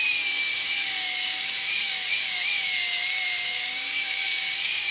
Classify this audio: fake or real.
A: fake